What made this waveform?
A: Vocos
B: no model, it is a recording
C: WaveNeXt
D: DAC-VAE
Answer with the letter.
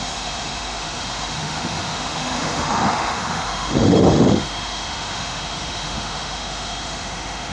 D